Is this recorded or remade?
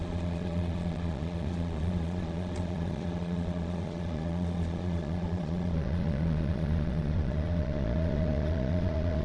remade